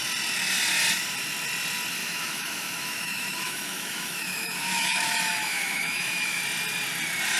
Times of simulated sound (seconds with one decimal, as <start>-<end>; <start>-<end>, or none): 2.0-6.4

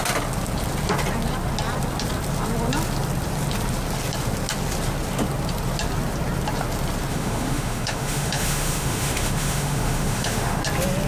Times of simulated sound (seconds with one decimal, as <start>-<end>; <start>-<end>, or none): 7.1-10.6

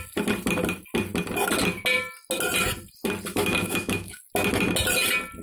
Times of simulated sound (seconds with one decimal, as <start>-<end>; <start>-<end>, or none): 3.3-4.2

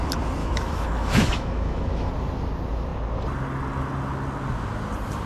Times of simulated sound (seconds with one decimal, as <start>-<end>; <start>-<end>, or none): 0.4-2.1